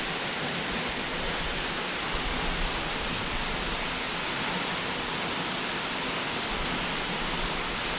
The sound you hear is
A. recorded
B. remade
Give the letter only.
A